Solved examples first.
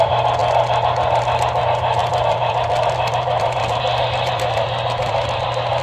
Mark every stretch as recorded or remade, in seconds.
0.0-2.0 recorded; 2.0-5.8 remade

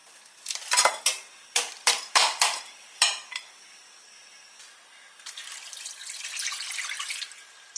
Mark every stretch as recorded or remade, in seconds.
0.0-4.2 remade; 4.2-6.7 recorded; 6.7-7.8 remade

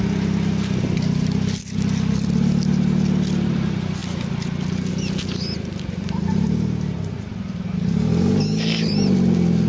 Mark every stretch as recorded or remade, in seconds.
0.0-9.7 recorded

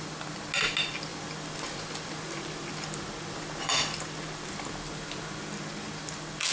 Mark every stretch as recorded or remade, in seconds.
0.0-1.1 recorded; 1.1-4.6 remade; 4.6-6.5 recorded

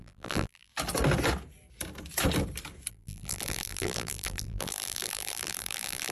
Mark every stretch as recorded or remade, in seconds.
0.0-0.7 remade; 0.7-2.9 recorded; 2.9-6.1 remade

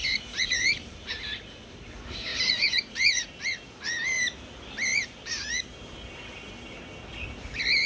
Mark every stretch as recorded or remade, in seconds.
0.0-1.1 remade; 1.1-2.3 recorded; 2.3-3.4 remade; 3.4-4.9 recorded; 4.9-5.5 remade; 5.5-7.9 recorded